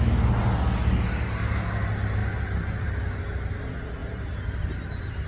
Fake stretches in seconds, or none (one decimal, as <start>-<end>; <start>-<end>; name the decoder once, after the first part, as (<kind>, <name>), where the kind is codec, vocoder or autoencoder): none